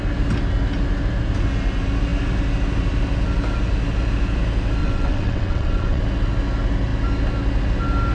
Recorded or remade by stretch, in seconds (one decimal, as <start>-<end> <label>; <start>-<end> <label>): 0.0-4.8 recorded; 4.8-6.0 remade; 6.0-8.1 recorded